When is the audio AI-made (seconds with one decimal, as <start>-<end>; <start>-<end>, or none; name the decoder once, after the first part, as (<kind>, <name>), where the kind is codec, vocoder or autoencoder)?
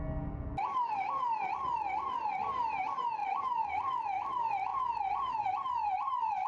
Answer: 3.2-4.0 (vocoder, Vocos)